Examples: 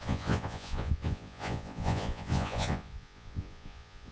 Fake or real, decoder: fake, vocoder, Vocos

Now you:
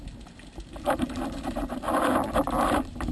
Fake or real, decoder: real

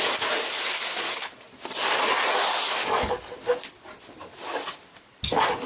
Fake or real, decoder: real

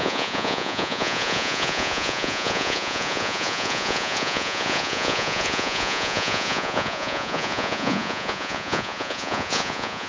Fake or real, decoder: fake, vocoder, Vocos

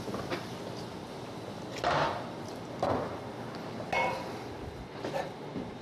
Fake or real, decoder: real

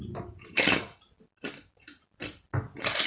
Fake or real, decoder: real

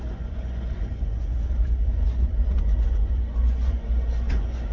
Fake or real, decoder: fake, vocoder, Vocos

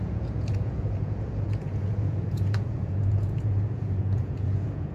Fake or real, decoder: fake, vocoder, Vocos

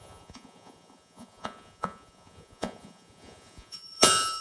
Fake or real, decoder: fake, vocoder, Vocos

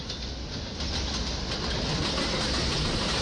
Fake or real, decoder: real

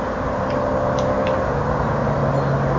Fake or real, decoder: real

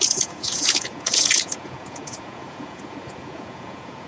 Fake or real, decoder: fake, vocoder, Vocos